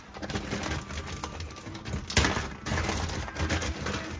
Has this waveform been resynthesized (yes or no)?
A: no